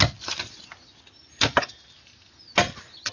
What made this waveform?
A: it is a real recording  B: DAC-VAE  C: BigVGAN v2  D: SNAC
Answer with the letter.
A